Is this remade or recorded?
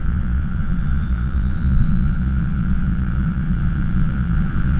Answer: remade